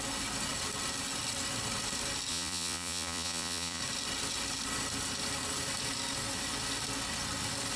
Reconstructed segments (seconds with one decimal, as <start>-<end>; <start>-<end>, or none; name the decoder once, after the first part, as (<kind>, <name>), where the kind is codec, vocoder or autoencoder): 2.3-3.8 (vocoder, Vocos)